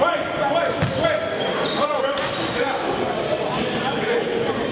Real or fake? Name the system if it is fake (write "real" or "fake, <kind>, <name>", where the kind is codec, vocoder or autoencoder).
real